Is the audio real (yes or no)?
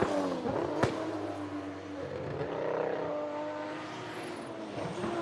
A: yes